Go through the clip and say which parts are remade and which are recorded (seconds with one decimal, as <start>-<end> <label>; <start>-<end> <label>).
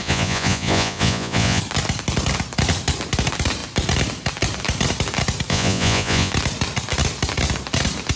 0.0-1.6 remade; 1.6-5.5 recorded; 5.5-6.3 remade; 6.3-8.2 recorded